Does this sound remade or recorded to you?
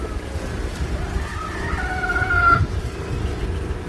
recorded